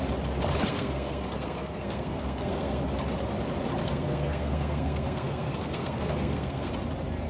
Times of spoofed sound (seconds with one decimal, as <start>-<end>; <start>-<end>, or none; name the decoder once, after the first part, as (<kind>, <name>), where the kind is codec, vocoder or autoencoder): 0.7-2.8 (codec, SNAC); 3.8-6.7